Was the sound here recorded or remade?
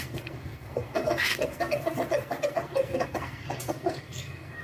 remade